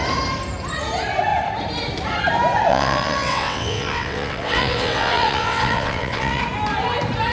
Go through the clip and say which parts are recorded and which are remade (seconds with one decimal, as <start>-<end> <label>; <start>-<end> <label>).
0.0-2.7 recorded; 2.7-6.4 remade; 6.4-7.3 recorded